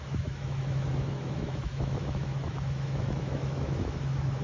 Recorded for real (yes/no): no